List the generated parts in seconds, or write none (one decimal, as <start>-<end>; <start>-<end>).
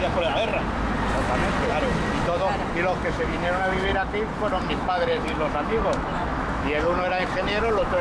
0.0-0.5; 3.0-3.9; 4.7-8.0